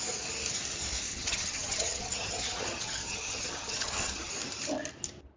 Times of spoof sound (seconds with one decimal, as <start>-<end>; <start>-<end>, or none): 1.1-4.3